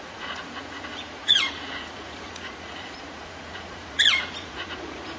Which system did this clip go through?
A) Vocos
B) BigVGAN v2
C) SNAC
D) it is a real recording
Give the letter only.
A